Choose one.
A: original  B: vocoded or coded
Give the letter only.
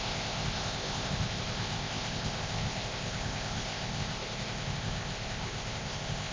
B